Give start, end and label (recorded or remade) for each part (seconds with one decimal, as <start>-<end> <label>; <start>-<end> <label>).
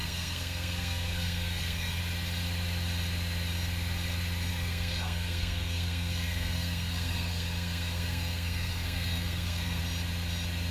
0.0-2.0 remade; 2.0-4.5 recorded; 4.5-9.8 remade; 9.8-10.7 recorded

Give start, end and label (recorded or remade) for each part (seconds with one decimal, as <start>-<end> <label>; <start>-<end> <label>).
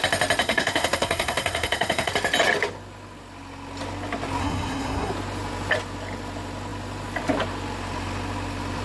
0.0-0.4 recorded; 0.4-2.1 remade; 2.1-4.4 recorded; 4.4-5.1 remade; 5.1-8.8 recorded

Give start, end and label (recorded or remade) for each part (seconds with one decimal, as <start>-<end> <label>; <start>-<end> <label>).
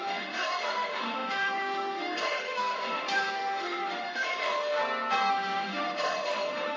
0.0-4.8 remade; 4.8-5.3 recorded; 5.3-6.8 remade